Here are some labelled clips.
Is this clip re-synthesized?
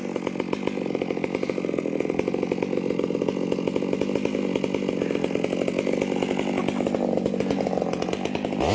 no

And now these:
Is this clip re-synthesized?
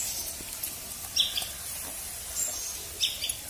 no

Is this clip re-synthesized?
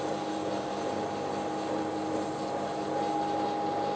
no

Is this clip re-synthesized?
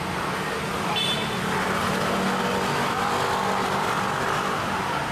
no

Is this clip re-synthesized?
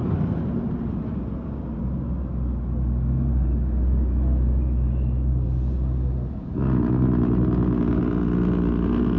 no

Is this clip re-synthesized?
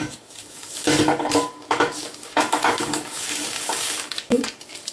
yes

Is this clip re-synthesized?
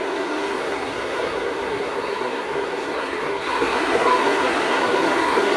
yes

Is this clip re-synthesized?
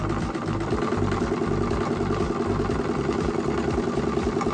no